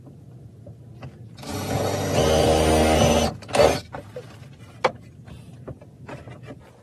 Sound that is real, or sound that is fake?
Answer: real